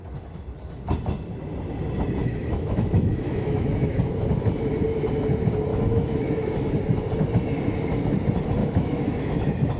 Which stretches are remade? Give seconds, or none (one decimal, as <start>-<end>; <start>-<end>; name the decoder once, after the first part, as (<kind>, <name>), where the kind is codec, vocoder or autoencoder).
2.2-4.0 (autoencoder, DAC-VAE); 5.7-6.7; 8.6-9.4